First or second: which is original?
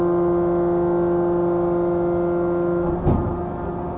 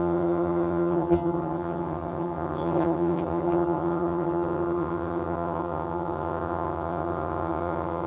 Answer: first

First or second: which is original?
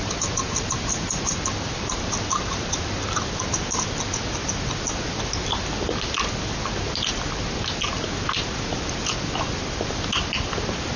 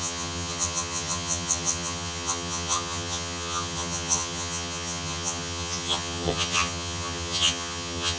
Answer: first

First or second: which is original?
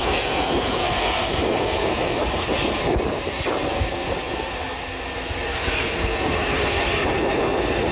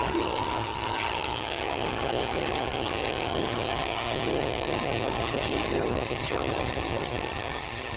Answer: first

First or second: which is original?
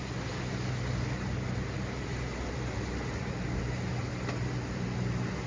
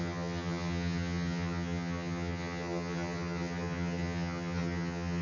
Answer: first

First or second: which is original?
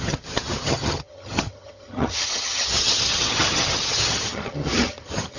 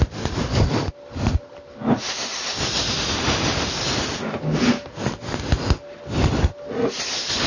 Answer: second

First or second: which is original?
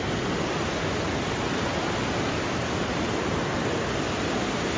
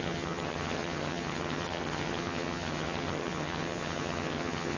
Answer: first